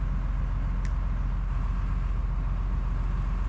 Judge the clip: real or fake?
real